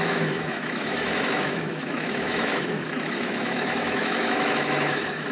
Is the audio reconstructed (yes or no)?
yes